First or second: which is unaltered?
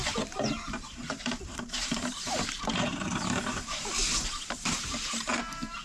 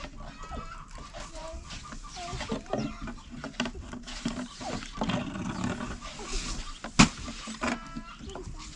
second